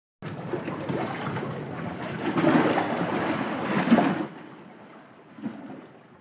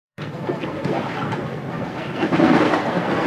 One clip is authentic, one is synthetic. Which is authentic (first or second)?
first